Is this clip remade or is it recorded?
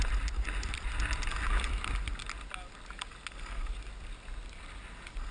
recorded